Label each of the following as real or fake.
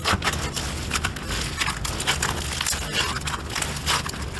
real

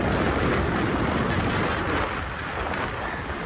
real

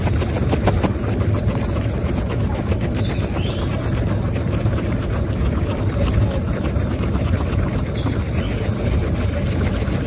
real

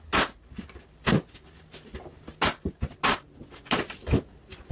real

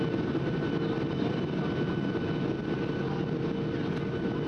real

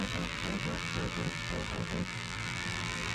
fake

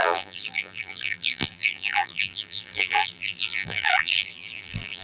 fake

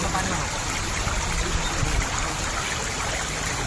real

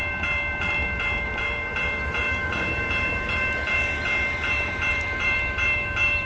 fake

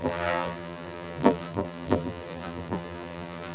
fake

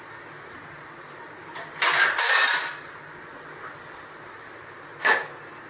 real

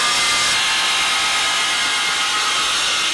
real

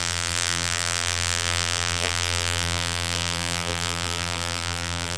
fake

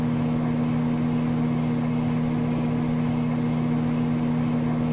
real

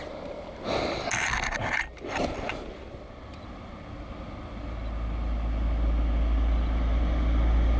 real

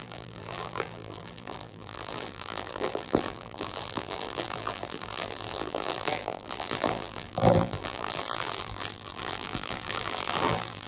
fake